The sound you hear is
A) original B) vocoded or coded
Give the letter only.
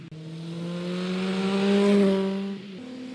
A